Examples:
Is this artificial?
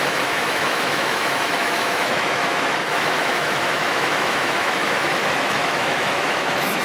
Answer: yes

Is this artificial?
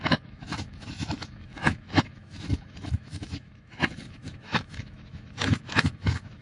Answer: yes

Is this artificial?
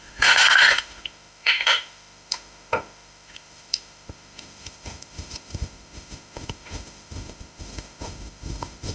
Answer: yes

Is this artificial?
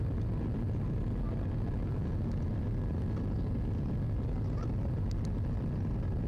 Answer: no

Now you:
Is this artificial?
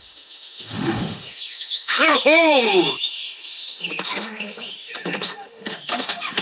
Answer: yes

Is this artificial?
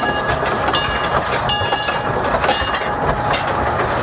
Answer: no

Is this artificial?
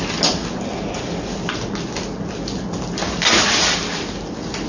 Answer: no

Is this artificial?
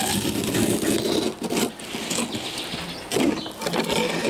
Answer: no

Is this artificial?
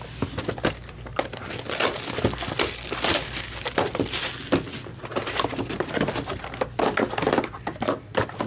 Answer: no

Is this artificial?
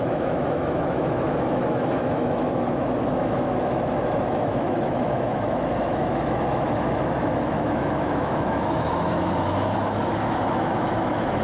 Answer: yes